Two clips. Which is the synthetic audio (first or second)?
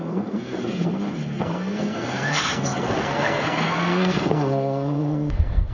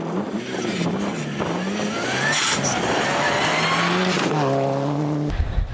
first